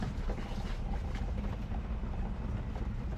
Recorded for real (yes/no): yes